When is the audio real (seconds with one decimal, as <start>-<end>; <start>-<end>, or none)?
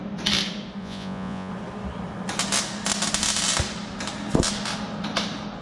0.0-0.8; 1.5-5.6